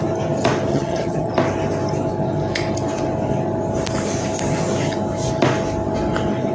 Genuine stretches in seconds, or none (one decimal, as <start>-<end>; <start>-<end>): 0.0-0.7; 1.3-6.5